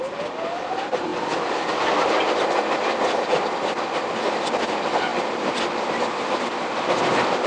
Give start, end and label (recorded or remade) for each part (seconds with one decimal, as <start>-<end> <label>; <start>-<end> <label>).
0.0-1.1 remade; 1.1-1.7 recorded; 1.7-7.5 remade